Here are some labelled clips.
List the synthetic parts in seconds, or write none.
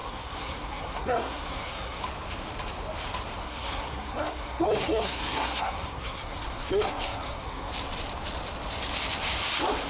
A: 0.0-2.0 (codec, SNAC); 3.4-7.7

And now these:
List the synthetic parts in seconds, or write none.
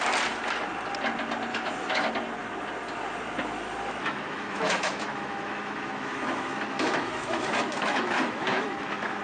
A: 1.5-2.1 (autoencoder, DAC-VAE); 4.0-9.2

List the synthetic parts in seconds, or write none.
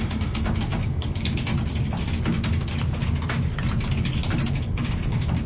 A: 0.0-1.5 (codec, DAC); 4.5-5.5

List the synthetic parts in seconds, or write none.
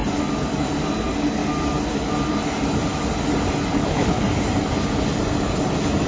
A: 3.7-4.2 (codec, HILCodec)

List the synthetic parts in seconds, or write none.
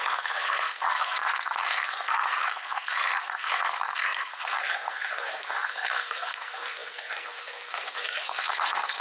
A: 0.0-9.0 (codec, SNAC)